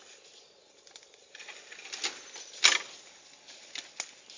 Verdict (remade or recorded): recorded